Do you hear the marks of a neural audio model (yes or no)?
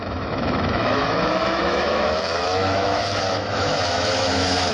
yes